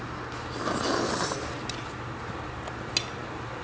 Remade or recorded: recorded